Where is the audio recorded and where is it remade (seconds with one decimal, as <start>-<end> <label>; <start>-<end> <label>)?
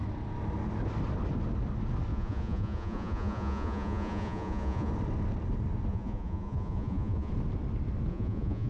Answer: 0.0-2.1 recorded; 2.1-4.9 remade; 4.9-5.9 recorded; 5.9-7.3 remade; 7.3-8.1 recorded; 8.1-8.7 remade